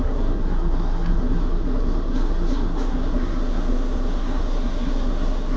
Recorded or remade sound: remade